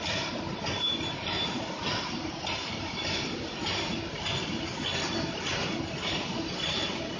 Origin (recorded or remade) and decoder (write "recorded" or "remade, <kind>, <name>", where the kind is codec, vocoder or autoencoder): recorded